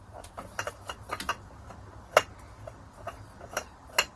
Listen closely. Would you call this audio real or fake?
real